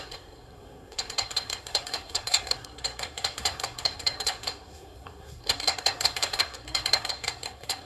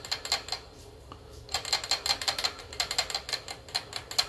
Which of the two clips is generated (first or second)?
first